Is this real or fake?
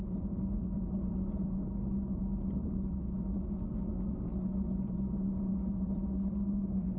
real